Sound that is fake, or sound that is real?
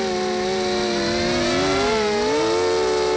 real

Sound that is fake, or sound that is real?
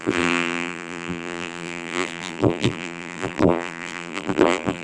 fake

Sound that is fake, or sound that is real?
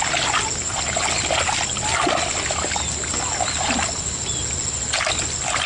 real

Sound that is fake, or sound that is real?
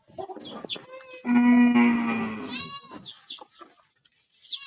real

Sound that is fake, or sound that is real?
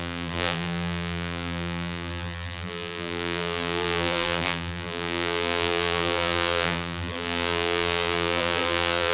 fake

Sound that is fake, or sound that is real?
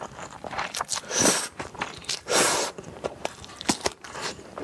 fake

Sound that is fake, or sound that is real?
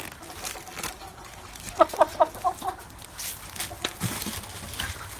real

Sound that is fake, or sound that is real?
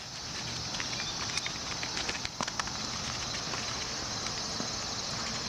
real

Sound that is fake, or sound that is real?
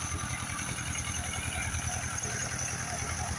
fake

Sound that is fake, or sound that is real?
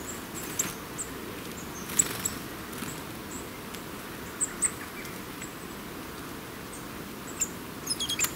real